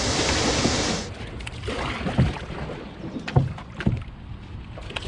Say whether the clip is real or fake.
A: real